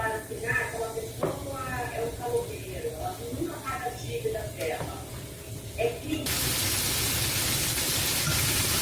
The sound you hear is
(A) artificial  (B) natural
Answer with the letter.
B